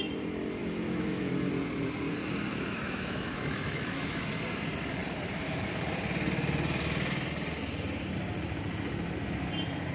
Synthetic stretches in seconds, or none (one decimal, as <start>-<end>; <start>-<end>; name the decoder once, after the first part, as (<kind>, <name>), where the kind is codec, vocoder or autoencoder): 0.6-1.3 (autoencoder, DAC-VAE); 2.5-4.3

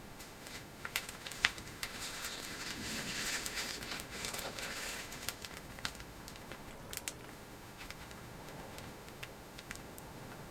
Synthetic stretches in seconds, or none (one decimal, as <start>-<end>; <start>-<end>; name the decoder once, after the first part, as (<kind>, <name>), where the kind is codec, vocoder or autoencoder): 0.0-6.7 (autoencoder, DAC-VAE); 7.3-10.5

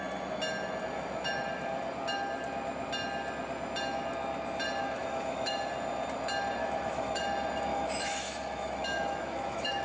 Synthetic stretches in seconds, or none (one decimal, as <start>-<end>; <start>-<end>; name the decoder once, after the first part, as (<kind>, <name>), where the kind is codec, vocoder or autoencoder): 4.8-5.5 (autoencoder, DAC-VAE); 6.6-7.2; 7.7-9.8

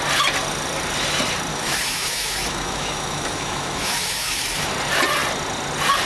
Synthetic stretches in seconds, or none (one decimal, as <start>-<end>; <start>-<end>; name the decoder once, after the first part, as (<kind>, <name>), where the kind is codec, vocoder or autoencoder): 1.5-4.7 (autoencoder, DAC-VAE)

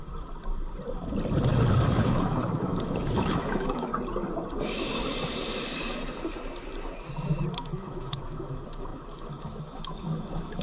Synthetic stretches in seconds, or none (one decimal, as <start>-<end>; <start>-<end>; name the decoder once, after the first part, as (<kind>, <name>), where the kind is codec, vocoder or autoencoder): 1.9-3.9 (autoencoder, DAC-VAE); 7.5-10.6

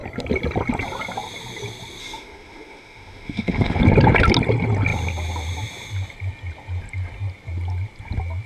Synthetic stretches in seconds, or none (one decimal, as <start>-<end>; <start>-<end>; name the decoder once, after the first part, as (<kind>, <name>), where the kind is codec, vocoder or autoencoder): 2.0-3.8 (autoencoder, DAC-VAE)